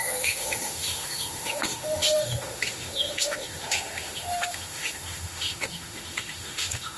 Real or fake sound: fake